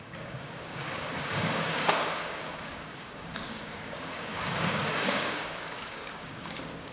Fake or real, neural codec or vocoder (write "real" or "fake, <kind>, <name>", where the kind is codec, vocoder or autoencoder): fake, codec, DAC